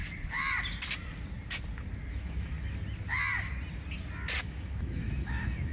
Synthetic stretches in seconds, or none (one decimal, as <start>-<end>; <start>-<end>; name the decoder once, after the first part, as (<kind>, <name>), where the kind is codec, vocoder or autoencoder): 2.1-2.5 (autoencoder, DAC-VAE); 4.4-5.7

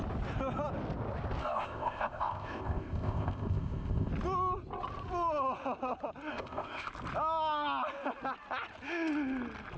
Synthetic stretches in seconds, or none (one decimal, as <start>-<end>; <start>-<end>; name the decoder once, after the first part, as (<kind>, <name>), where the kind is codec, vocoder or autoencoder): 1.4-4.1 (codec, ZipCodec); 6.3-6.9

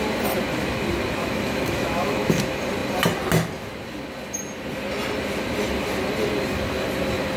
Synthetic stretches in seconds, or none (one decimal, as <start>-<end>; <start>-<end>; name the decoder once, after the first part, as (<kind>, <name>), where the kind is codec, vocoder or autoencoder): 1.2-2.4 (autoencoder, DAC-VAE)